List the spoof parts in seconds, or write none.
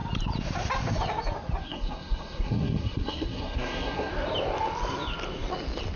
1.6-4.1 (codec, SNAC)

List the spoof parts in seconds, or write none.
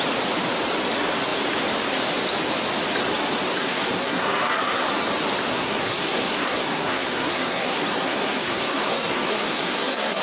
3.6-4.9 (codec, SNAC); 5.5-10.2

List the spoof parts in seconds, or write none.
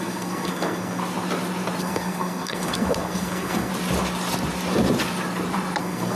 0.0-1.0 (codec, SNAC); 1.8-3.7; 5.8-6.2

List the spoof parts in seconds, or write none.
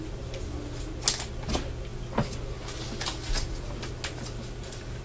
none